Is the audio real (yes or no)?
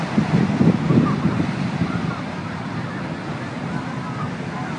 yes